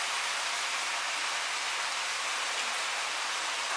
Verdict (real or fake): real